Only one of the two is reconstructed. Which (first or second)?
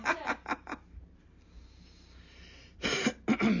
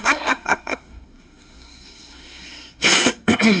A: second